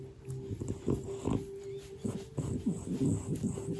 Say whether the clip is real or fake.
real